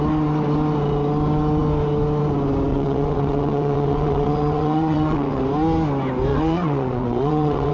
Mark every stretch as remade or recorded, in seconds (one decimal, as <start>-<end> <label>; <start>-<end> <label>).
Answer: 0.0-2.7 recorded; 2.7-5.4 remade; 5.4-6.3 recorded; 6.3-7.7 remade